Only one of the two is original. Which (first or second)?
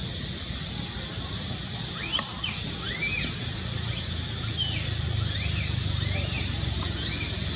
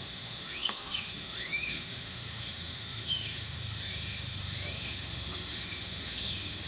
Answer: first